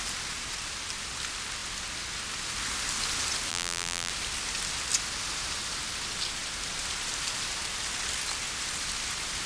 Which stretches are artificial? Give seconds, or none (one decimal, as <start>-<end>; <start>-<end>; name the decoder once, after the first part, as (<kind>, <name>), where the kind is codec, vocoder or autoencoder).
3.5-4.1 (vocoder, BigVGAN v2)